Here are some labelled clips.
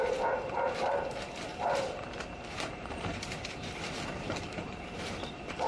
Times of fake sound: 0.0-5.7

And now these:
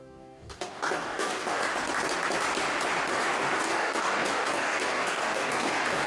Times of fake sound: 0.0-1.7; 3.1-6.1

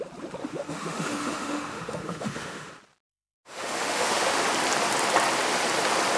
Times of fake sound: 0.4-2.7; 3.1-4.4

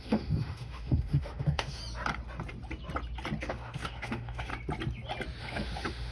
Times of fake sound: 0.0-1.8; 3.4-4.5; 5.4-6.1

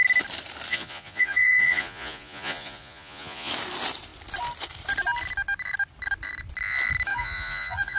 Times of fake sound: 0.7-3.5; 7.1-8.0

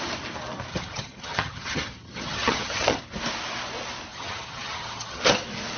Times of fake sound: 0.7-3.0; 4.1-5.2